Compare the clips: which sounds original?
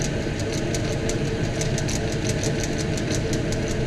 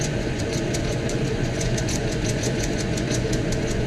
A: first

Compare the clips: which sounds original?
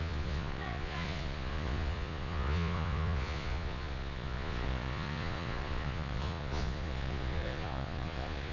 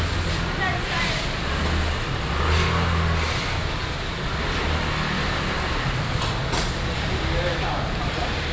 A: second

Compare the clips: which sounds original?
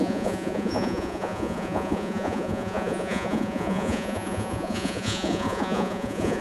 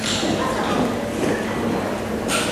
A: second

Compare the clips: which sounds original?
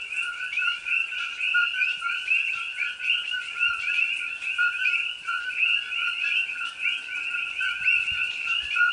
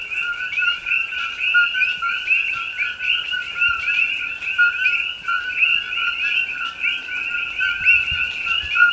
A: second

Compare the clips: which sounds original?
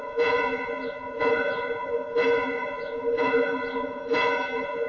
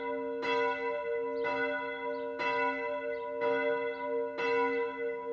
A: second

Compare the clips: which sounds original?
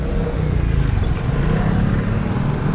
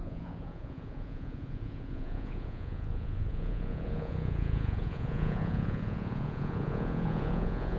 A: first